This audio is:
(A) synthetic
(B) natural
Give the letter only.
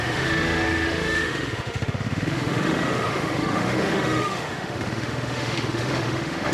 A